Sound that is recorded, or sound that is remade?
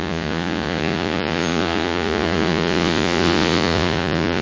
remade